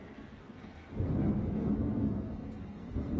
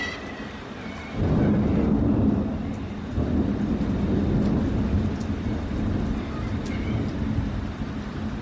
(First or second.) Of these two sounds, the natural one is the second